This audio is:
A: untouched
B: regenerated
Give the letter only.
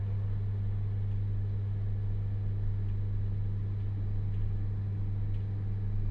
A